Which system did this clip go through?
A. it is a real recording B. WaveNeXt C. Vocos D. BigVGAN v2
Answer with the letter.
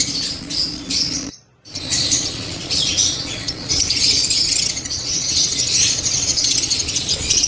C